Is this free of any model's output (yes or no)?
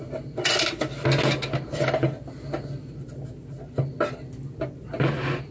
yes